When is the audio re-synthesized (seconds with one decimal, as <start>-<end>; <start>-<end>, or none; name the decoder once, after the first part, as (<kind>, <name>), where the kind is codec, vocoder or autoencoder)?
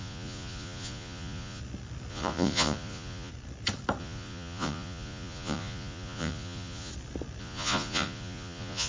0.0-1.6 (vocoder, Vocos); 2.1-3.3; 4.0-6.9; 7.4-8.9